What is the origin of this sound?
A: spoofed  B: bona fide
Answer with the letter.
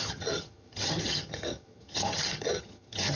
A